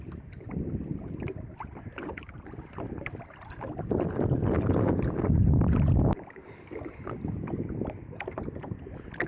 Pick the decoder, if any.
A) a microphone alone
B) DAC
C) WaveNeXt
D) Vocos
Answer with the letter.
A